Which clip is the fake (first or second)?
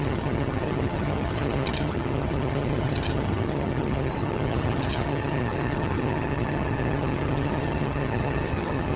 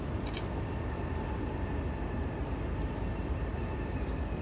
first